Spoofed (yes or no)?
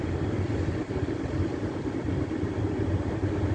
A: no